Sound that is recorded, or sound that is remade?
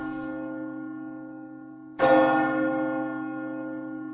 recorded